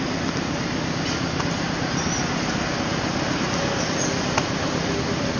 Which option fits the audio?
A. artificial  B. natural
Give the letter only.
B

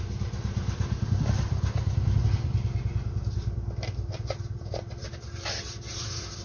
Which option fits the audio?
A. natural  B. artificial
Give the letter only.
B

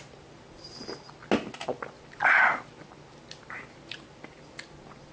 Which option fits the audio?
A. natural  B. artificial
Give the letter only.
A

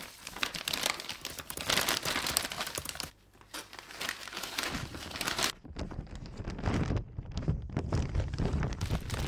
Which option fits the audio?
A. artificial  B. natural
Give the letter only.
B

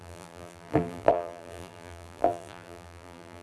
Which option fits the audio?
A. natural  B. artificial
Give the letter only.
B